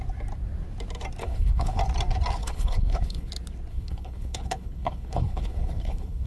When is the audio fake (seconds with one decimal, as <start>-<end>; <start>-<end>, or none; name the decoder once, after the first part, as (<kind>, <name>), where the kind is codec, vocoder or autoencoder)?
1.2-1.8 (codec, HILCodec); 2.4-3.3; 3.7-6.3